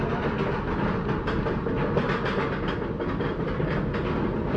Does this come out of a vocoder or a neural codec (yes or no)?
no